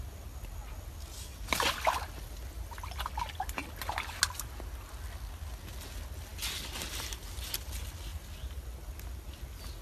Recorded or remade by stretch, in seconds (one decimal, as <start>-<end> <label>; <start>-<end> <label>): 0.0-9.8 recorded